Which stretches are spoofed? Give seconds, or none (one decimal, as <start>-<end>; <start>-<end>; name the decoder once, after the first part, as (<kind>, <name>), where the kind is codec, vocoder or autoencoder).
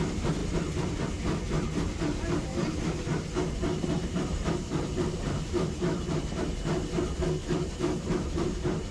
4.0-6.4 (vocoder, BigVGAN v2); 7.4-8.9